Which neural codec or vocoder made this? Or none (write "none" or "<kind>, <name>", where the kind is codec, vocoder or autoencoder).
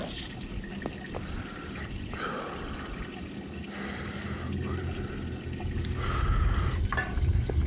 none